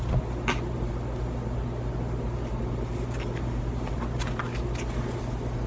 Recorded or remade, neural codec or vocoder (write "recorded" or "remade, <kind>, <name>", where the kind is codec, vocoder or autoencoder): recorded